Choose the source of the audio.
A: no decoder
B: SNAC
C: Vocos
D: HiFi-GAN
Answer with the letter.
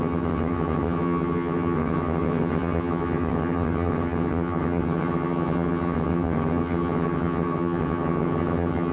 D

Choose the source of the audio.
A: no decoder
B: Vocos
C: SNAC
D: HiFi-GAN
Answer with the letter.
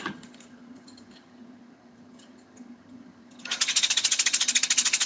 D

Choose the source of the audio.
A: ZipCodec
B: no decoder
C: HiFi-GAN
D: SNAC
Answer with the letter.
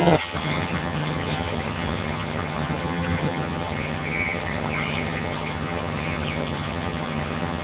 C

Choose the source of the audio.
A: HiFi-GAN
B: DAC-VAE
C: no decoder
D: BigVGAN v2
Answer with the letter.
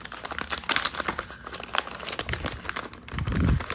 C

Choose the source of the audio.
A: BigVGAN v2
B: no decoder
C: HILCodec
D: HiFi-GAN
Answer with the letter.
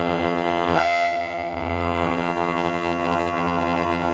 D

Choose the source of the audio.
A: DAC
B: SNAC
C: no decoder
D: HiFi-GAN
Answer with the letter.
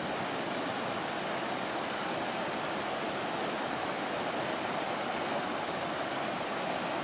C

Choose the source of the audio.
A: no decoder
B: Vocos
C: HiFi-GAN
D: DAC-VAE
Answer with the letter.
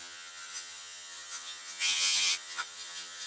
C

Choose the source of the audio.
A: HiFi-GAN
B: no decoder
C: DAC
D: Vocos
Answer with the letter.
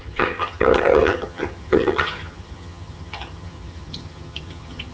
A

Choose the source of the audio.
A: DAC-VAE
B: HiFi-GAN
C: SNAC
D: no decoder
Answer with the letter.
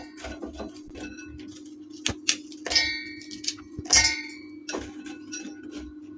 D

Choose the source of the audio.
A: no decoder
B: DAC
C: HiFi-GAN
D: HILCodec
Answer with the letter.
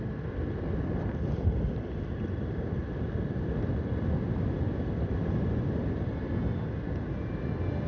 A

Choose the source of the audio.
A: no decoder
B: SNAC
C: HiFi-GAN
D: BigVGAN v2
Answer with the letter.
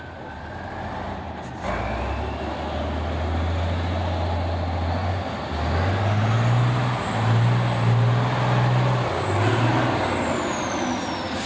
A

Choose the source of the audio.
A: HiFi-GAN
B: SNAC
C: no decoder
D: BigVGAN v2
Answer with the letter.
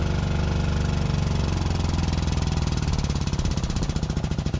C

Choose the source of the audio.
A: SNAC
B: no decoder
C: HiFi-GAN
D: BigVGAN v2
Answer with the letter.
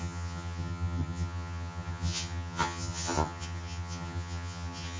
C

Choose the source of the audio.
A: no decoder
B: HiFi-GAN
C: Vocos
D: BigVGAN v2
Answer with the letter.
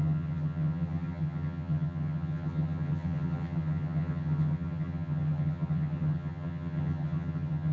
B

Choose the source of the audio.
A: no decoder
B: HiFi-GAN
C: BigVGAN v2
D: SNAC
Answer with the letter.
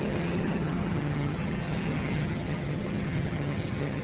B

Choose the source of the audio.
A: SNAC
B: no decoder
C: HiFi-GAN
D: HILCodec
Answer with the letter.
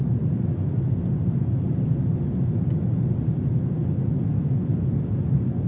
B